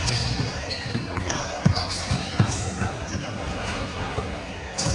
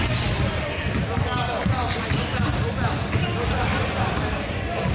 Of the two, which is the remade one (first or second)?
first